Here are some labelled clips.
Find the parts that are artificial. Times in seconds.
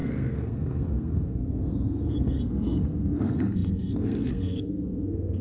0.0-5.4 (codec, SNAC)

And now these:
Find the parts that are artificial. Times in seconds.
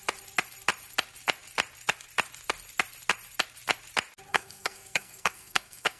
4.3-6.0 (codec, SNAC)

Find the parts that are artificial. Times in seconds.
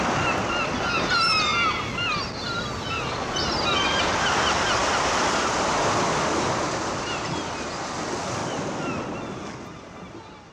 none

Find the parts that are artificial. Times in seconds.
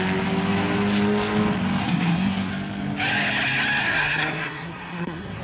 1.8-2.5 (codec, SNAC); 3.8-5.4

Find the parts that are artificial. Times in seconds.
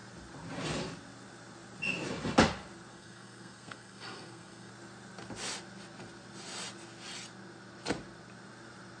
2.9-4.7 (codec, SNAC)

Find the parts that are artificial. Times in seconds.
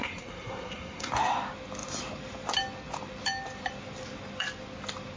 0.0-1.1 (codec, SNAC)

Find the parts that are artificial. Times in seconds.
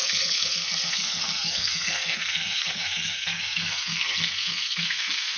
0.0-5.4 (codec, SNAC)